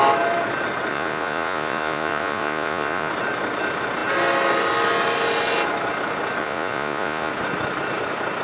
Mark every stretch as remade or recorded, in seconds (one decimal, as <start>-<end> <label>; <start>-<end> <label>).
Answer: 0.0-0.9 recorded; 0.9-3.1 remade; 3.1-6.4 recorded; 6.4-7.3 remade; 7.3-8.4 recorded